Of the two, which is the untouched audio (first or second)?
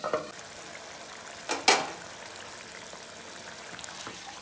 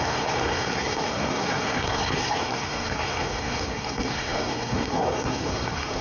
first